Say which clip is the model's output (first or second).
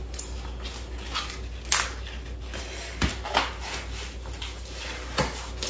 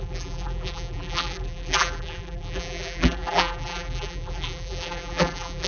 second